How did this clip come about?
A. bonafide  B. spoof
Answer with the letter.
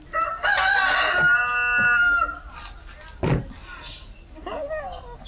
A